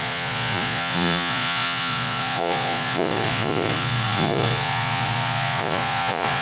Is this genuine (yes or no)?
no